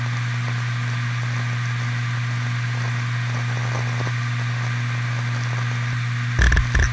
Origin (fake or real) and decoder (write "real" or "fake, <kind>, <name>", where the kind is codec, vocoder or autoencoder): real